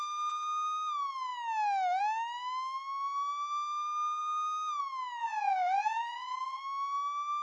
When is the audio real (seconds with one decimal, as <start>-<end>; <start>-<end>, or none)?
0.0-5.2; 6.6-7.4